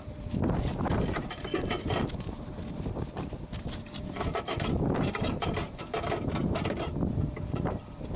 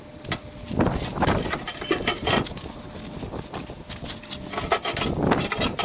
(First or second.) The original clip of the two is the second